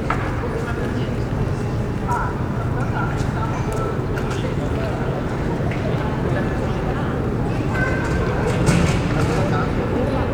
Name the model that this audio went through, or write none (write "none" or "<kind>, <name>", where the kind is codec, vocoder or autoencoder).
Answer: none